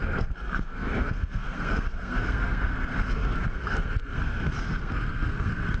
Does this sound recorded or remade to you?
remade